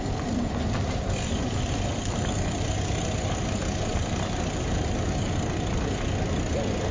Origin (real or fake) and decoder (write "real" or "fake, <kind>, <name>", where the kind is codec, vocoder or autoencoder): real